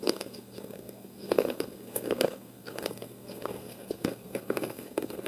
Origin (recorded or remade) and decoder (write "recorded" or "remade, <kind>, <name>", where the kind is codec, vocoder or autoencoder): remade, codec, SNAC